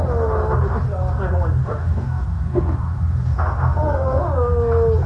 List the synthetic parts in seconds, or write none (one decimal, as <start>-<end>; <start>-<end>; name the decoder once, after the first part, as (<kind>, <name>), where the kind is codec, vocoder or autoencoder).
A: 1.6-4.2 (autoencoder, DAC-VAE)